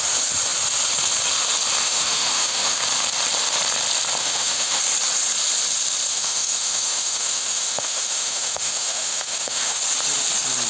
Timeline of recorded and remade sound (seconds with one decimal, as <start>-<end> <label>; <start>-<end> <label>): 0.0-1.8 recorded; 1.8-2.8 remade; 2.8-4.2 recorded; 4.2-4.8 remade; 4.8-6.1 recorded; 6.1-9.8 remade; 9.8-10.7 recorded